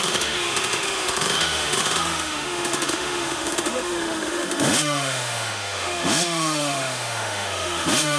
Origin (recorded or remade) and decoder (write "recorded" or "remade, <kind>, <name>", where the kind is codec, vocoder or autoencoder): remade, autoencoder, DAC-VAE